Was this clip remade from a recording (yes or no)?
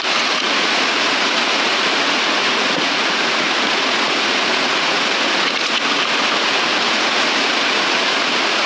yes